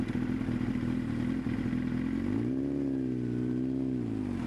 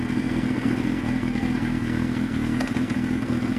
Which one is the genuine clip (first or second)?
first